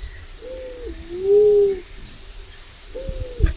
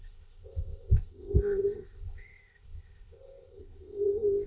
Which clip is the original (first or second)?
first